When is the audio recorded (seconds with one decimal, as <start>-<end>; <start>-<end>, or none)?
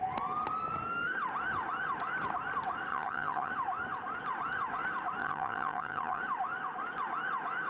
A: 0.0-2.9; 3.5-5.2; 6.2-7.7